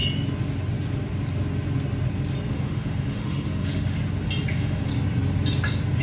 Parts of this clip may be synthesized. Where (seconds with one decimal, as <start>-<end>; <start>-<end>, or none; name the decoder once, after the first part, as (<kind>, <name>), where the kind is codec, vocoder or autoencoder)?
2.5-4.0 (autoencoder, DAC-VAE); 4.5-4.9

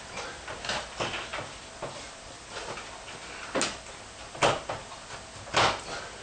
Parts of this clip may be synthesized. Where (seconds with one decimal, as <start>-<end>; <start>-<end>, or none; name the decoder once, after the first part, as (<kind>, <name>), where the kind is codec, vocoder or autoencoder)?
none

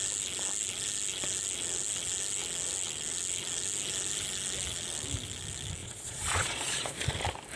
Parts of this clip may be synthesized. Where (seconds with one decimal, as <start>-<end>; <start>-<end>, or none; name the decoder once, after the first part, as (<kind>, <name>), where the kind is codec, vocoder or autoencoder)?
5.8-7.0 (vocoder, Vocos)

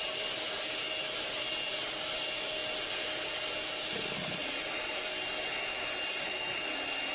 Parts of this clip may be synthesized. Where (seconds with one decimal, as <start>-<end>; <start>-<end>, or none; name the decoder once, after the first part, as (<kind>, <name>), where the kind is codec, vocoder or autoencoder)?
none

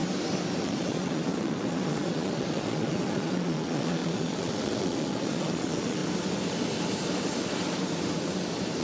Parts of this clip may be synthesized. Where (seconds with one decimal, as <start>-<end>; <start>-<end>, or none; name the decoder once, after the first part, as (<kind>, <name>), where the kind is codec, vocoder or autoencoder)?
0.6-6.0 (vocoder, Vocos)